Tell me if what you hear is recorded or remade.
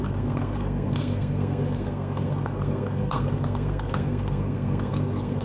remade